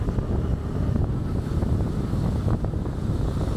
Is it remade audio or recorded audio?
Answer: recorded